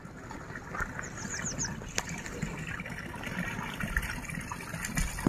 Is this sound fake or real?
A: real